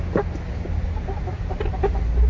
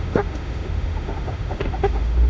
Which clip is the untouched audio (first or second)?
first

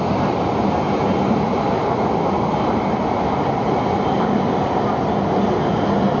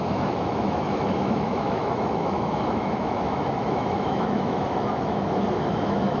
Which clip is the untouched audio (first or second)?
first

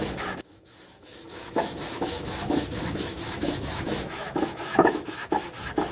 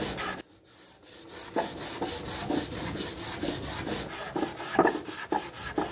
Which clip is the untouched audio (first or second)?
second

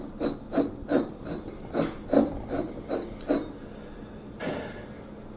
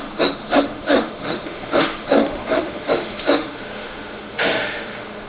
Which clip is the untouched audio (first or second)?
first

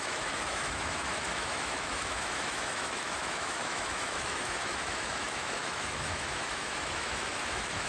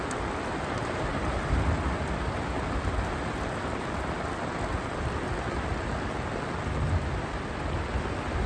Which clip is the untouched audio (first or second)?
second